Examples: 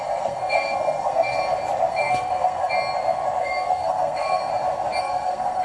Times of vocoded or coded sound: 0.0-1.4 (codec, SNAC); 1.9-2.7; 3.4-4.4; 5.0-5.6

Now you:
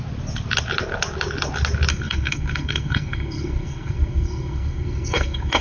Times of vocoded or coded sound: 1.9-5.6 (codec, SNAC)

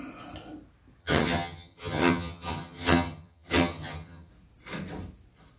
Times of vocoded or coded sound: 1.0-4.3 (vocoder, HiFi-GAN)

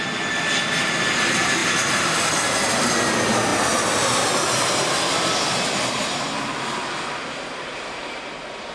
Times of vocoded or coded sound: none

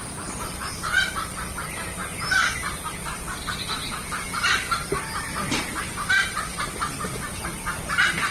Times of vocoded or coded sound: 0.0-2.0 (vocoder, BigVGAN v2); 3.5-8.3

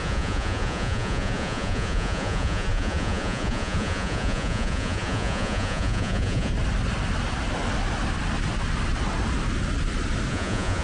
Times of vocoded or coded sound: 0.0-6.5 (vocoder, Vocos); 10.3-10.8

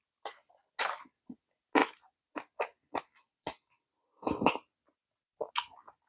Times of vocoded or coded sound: none